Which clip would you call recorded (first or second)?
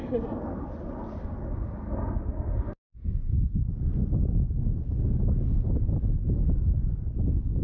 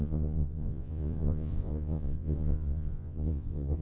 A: first